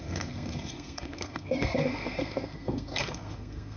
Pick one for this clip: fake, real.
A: fake